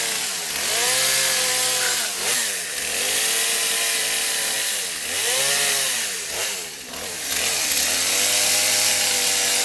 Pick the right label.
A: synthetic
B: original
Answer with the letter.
B